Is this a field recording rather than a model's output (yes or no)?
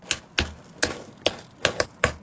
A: yes